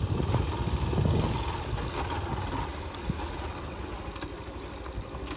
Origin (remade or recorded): recorded